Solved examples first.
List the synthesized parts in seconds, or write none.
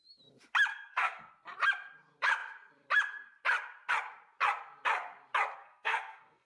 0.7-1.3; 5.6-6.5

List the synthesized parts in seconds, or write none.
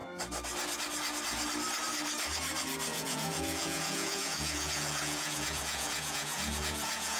2.9-7.2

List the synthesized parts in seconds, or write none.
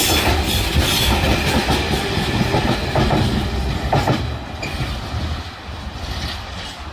none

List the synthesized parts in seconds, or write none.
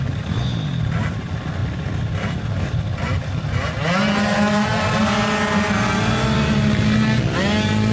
none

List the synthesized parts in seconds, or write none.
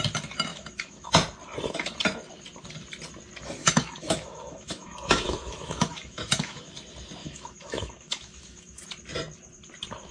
0.5-1.1; 3.6-6.6; 7.2-8.8